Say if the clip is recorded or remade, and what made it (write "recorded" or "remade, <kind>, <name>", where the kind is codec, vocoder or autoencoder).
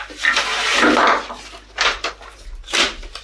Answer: recorded